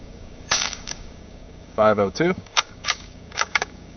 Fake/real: fake